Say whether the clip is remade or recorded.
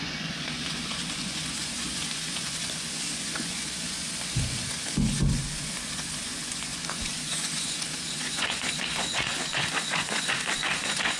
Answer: remade